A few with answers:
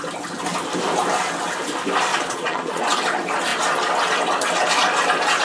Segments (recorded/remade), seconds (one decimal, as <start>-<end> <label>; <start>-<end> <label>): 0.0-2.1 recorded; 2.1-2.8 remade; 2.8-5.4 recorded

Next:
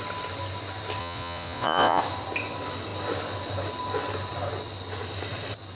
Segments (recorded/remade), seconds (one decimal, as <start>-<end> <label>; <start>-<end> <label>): 0.0-1.0 recorded; 1.0-2.0 remade; 2.0-5.7 recorded

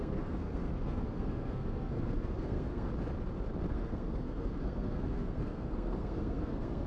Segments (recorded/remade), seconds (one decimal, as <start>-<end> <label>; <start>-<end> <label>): 0.0-2.9 remade; 2.9-3.7 recorded; 3.7-6.9 remade